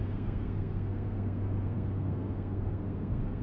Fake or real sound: fake